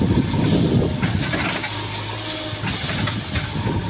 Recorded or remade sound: recorded